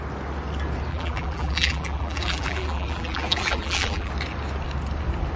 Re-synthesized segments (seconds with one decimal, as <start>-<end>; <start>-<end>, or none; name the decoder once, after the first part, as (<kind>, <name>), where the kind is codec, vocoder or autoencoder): 0.9-4.1 (vocoder, BigVGAN v2)